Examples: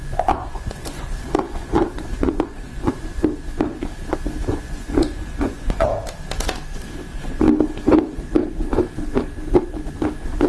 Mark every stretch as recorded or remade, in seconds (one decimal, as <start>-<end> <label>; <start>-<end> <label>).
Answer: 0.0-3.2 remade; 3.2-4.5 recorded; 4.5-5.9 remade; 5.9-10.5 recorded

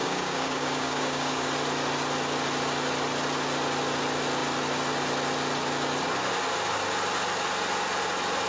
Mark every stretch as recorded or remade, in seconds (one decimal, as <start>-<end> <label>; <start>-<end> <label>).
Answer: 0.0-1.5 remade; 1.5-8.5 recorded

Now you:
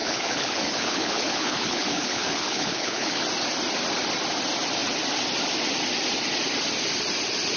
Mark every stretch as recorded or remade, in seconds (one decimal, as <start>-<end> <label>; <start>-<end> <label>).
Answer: 0.0-3.2 remade; 3.2-7.6 recorded

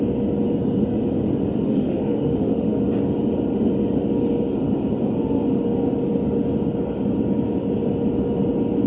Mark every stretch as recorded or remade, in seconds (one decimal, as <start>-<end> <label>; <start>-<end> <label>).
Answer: 0.0-1.6 recorded; 1.6-2.8 remade; 2.8-8.9 recorded

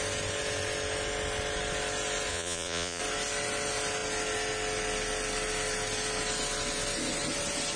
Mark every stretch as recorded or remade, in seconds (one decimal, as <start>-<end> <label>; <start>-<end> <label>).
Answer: 0.0-2.3 recorded; 2.3-3.0 remade; 3.0-7.8 recorded

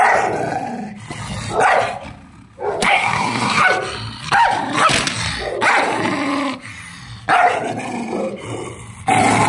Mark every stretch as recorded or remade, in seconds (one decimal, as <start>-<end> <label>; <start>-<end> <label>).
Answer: 0.0-2.9 recorded; 2.9-3.6 remade; 3.6-9.5 recorded

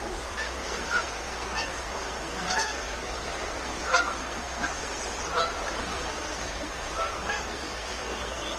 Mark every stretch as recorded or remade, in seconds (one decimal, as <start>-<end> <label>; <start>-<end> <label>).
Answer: 0.0-5.0 remade; 5.0-5.8 recorded; 5.8-8.6 remade

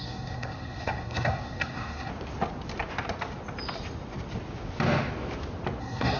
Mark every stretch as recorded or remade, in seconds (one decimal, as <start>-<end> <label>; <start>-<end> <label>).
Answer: 0.0-2.1 remade; 2.1-5.8 recorded; 5.8-6.2 remade